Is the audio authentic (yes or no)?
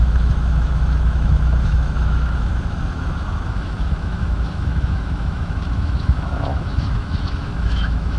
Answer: no